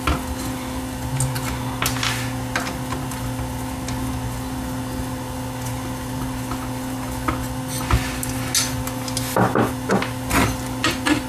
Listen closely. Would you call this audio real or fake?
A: real